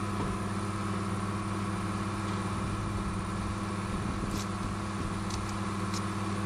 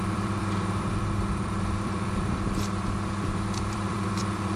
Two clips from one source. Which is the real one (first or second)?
first